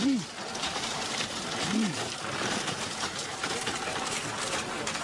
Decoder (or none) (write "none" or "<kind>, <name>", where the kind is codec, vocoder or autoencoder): vocoder, BigVGAN v2